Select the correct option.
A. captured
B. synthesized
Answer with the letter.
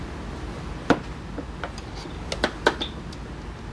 A